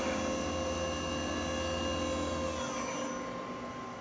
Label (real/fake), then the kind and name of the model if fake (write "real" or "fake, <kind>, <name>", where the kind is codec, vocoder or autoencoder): real